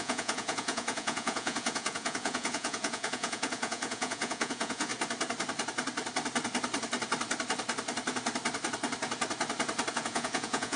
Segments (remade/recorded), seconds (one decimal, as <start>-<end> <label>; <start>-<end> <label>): 0.0-4.9 remade; 4.9-9.9 recorded; 9.9-10.8 remade